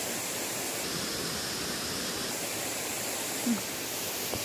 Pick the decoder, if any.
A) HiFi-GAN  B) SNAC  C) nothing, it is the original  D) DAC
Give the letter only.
C